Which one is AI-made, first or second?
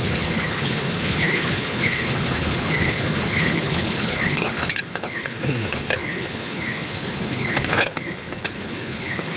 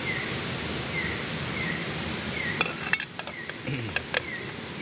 first